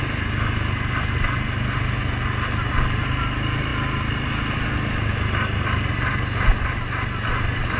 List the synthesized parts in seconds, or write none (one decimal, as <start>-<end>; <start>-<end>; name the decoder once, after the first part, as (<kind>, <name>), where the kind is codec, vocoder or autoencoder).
none

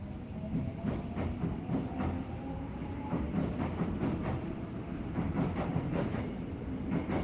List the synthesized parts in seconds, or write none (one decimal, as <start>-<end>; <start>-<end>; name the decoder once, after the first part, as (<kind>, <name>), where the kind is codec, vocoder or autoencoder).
5.7-6.2 (codec, SNAC)

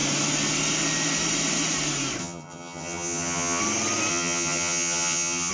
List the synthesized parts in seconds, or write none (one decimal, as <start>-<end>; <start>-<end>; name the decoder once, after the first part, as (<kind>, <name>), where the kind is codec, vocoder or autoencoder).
2.2-3.6 (vocoder, HiFi-GAN); 4.1-5.5

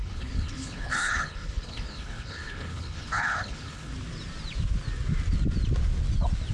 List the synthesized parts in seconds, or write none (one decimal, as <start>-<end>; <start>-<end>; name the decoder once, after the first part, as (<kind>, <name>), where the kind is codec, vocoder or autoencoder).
0.0-3.9 (codec, HILCodec)

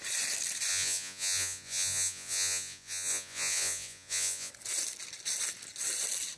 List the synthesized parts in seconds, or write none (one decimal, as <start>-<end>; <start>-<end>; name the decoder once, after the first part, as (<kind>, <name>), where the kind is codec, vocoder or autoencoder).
0.7-4.5 (vocoder, Vocos)

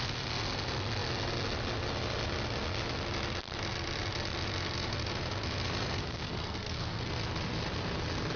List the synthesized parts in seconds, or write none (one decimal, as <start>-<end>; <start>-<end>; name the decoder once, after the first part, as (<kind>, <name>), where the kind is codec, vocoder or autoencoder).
6.0-7.1 (codec, SNAC)

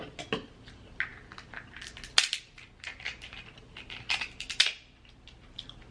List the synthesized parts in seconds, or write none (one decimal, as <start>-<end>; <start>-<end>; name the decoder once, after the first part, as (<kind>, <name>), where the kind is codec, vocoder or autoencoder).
none